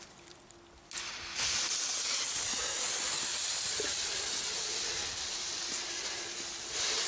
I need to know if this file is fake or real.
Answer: real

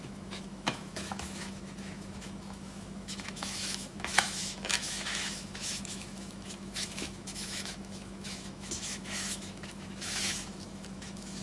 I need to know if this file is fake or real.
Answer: fake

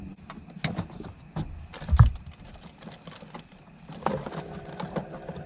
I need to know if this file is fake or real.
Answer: real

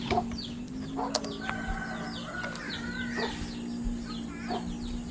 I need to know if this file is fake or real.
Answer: real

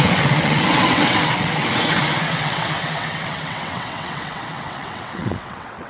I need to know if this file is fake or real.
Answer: fake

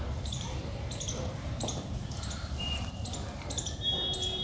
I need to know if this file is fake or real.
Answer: fake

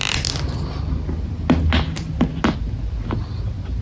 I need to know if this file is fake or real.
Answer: real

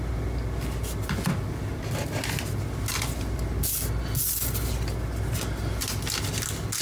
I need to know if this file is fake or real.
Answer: real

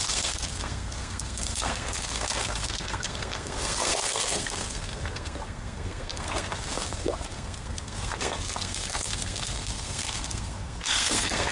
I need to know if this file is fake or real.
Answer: fake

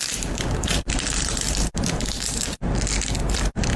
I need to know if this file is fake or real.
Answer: fake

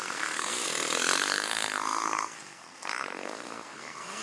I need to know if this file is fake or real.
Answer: fake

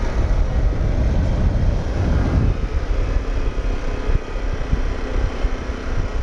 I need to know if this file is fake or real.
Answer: real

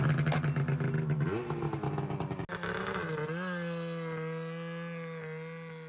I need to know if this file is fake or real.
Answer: real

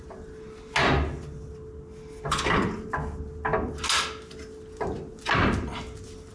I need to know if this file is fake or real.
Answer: real